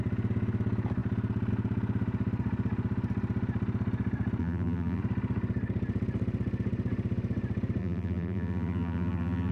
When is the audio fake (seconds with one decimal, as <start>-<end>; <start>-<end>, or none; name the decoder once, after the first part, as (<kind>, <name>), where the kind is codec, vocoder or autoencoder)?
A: 4.4-5.0 (vocoder, BigVGAN v2); 7.8-9.5